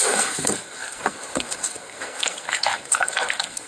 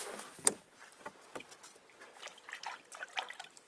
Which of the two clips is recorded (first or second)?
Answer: second